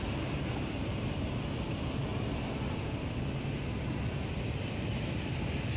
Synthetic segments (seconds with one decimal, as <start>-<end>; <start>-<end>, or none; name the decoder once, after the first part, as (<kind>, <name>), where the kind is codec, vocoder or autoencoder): none